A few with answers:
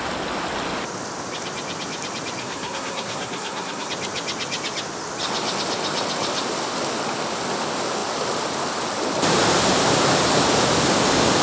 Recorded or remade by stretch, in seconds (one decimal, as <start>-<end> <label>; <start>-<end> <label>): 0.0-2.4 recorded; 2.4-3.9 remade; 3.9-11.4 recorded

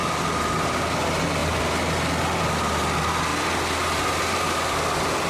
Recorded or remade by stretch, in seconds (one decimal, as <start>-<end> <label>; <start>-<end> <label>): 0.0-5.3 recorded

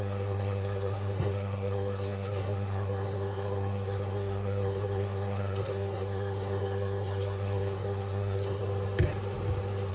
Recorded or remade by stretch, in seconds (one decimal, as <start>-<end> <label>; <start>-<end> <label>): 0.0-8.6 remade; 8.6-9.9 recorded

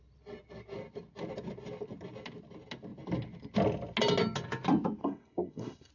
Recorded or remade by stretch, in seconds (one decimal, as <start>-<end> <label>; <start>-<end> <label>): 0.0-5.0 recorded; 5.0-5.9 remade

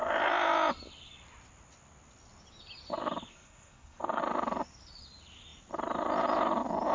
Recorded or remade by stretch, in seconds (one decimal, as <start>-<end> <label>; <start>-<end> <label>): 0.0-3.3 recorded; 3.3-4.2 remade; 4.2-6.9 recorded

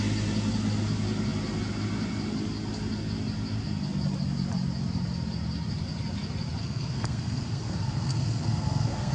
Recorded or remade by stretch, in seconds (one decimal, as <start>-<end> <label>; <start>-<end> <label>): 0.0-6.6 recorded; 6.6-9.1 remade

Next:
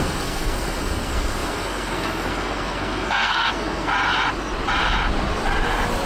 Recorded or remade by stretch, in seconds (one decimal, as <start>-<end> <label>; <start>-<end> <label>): 0.0-3.9 remade; 3.9-6.1 recorded

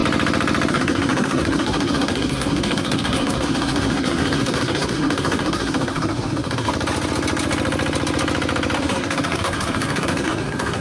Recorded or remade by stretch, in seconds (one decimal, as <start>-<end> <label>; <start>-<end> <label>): 0.0-0.7 recorded; 0.7-6.7 remade; 6.7-8.8 recorded; 8.8-10.8 remade